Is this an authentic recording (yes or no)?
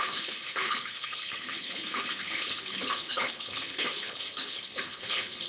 no